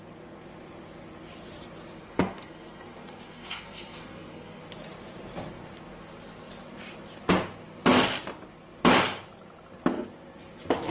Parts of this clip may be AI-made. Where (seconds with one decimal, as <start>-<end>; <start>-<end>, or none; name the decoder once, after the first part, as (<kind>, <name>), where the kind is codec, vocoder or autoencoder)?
2.0-4.6 (codec, SNAC)